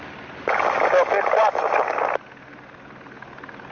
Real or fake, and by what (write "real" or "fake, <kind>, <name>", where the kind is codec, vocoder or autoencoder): real